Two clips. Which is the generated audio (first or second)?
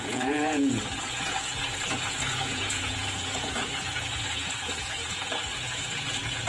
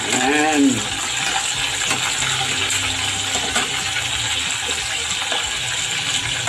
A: first